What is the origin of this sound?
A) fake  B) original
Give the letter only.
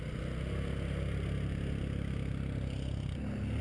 B